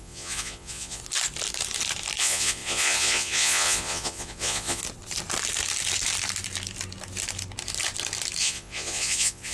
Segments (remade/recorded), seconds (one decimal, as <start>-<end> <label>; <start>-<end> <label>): 0.0-1.0 remade; 1.0-2.2 recorded; 2.2-4.8 remade; 4.8-8.4 recorded; 8.4-9.5 remade

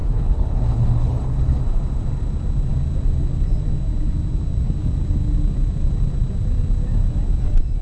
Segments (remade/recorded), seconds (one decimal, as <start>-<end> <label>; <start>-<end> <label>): 0.0-1.6 remade; 1.6-7.8 recorded